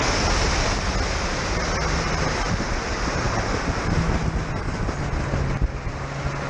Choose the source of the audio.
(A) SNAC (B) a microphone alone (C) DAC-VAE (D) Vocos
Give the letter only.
B